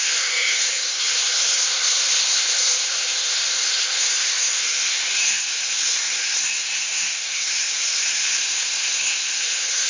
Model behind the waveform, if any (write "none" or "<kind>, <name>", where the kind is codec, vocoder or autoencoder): codec, SNAC